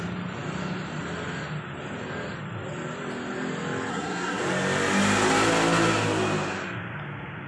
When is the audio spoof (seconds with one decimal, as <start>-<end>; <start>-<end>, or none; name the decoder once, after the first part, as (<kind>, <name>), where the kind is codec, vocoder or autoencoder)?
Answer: 3.9-4.4 (codec, SNAC)